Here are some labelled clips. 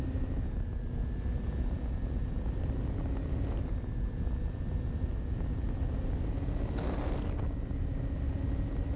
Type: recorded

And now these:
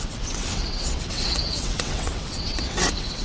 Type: remade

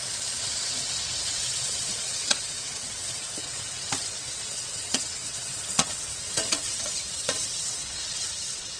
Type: remade